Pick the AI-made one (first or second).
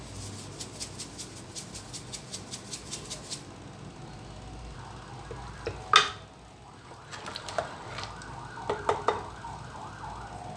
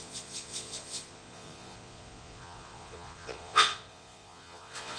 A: second